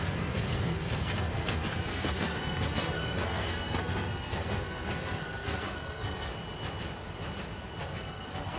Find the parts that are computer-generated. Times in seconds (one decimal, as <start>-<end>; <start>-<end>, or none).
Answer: 0.0-6.3; 7.8-8.6